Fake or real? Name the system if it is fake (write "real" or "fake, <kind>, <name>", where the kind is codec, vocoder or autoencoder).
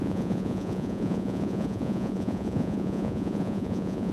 fake, vocoder, Vocos